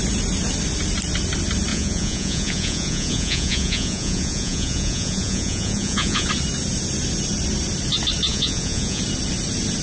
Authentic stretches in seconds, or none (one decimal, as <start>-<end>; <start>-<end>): 0.0-1.7; 6.3-8.3; 9.0-9.8